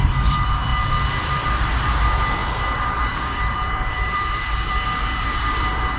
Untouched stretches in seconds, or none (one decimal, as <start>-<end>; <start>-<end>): 0.7-1.3